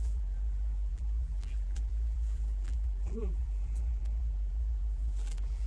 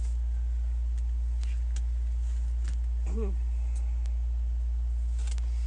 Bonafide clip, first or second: second